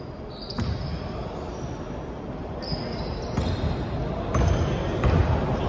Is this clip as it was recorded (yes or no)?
yes